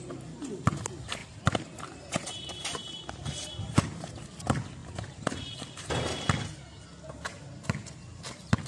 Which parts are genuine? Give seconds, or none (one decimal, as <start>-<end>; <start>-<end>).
0.0-1.2; 3.0-3.5; 4.1-4.8; 6.2-8.1